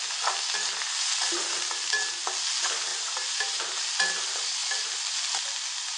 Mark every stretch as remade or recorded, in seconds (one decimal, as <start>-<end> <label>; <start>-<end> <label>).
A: 0.0-6.0 recorded